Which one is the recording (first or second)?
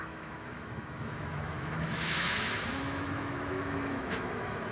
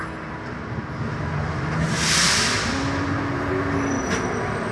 second